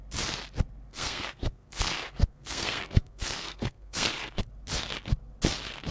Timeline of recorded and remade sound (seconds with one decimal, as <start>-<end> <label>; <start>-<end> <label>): 0.0-0.9 recorded; 0.9-4.4 remade; 4.4-5.9 recorded